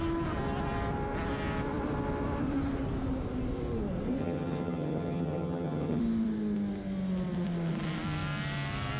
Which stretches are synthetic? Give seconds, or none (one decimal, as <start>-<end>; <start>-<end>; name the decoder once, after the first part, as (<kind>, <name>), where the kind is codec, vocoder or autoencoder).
4.2-6.0 (vocoder, HiFi-GAN)